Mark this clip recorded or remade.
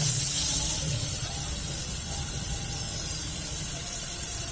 remade